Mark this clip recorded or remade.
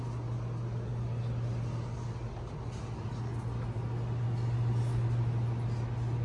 recorded